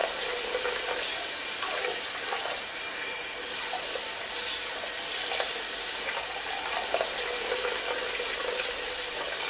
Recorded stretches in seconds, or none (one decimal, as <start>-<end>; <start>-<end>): 0.6-9.5